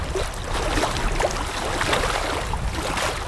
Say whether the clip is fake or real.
real